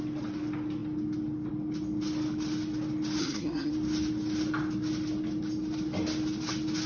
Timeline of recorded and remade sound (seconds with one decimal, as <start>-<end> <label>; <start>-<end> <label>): 0.0-3.2 recorded; 3.2-3.7 remade; 3.7-6.9 recorded